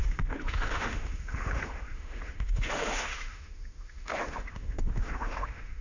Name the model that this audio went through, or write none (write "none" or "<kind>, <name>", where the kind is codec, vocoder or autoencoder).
autoencoder, DAC-VAE